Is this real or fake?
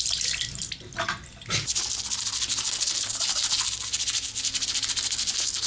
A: real